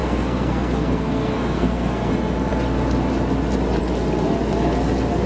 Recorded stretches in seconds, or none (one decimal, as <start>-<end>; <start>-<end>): 2.1-5.3

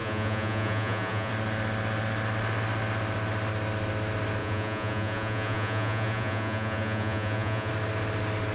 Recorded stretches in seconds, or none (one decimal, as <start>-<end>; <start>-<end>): 1.3-4.4; 7.7-8.5

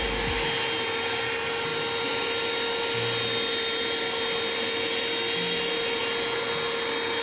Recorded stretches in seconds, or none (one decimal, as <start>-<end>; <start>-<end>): 0.0-7.2

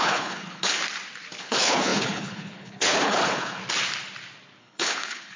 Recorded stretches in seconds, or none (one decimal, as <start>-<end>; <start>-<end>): 0.8-1.4; 3.6-4.6

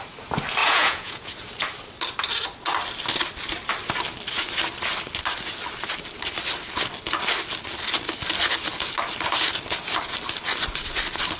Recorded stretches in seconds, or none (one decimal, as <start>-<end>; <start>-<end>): 0.0-0.6; 1.3-11.4

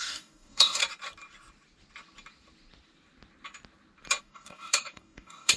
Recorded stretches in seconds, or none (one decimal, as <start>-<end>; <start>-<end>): 0.8-4.2

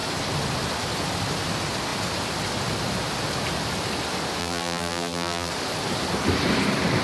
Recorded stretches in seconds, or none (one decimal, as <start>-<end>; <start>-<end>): 0.0-4.4; 5.5-7.0

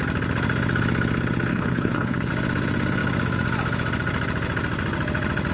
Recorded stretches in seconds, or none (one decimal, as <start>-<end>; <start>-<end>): 0.0-1.5; 2.3-5.5